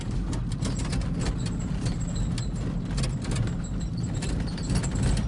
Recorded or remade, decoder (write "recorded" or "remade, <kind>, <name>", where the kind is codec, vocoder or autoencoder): recorded